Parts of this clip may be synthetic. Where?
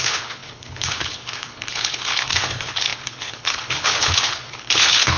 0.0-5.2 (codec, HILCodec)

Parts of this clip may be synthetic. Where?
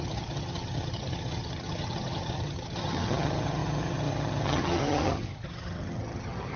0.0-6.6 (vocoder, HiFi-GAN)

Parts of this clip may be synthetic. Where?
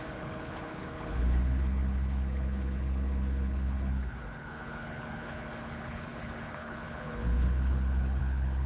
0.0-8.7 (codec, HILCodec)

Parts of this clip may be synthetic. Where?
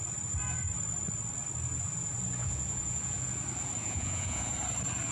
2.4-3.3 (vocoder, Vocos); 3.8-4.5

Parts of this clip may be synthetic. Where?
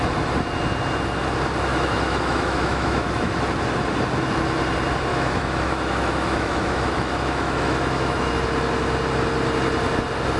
1.7-3.4 (autoencoder, DAC-VAE); 5.1-8.3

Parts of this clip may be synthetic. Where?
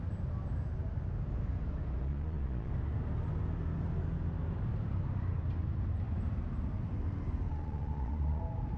2.0-2.7 (vocoder, Vocos); 7.5-8.4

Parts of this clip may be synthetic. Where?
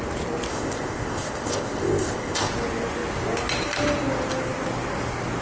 0.5-2.5 (codec, ZipCodec)